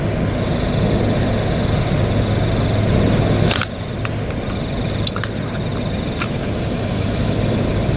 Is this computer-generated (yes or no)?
no